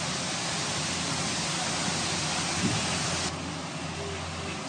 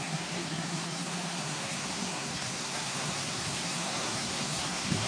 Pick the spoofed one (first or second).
second